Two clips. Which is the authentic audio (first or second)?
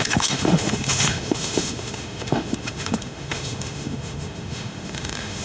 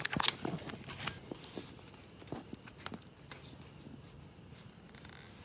second